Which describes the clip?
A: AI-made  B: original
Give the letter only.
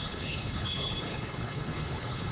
A